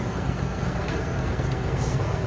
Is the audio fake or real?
fake